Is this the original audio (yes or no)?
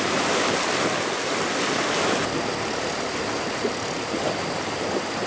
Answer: yes